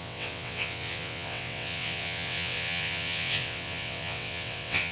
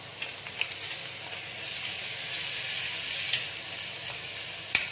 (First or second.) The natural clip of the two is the second